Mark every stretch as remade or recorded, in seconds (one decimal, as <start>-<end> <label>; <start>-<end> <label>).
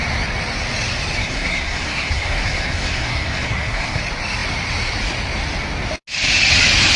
0.0-1.2 recorded; 1.2-4.0 remade; 4.0-7.0 recorded